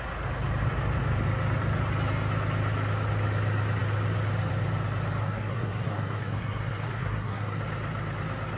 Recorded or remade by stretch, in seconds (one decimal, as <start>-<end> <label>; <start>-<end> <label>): 0.0-5.2 recorded; 5.2-7.6 remade; 7.6-8.6 recorded